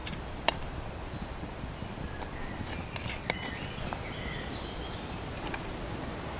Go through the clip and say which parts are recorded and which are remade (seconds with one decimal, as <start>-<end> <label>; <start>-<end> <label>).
0.0-6.4 recorded